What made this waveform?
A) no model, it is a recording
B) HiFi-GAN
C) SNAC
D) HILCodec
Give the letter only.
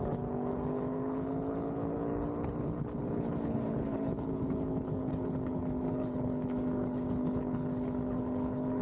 D